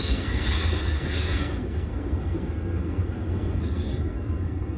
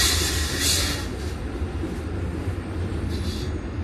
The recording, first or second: second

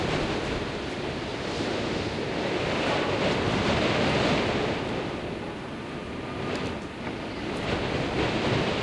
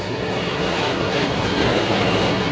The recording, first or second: first